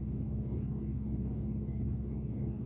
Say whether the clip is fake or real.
fake